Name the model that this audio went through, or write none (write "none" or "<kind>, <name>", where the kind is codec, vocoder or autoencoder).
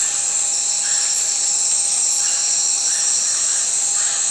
none